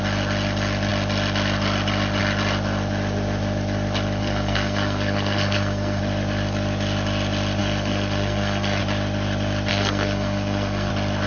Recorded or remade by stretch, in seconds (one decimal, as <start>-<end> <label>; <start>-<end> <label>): 0.0-4.2 recorded; 4.2-6.0 remade; 6.0-7.6 recorded; 7.6-8.8 remade; 8.8-9.7 recorded; 9.7-10.9 remade; 10.9-11.3 recorded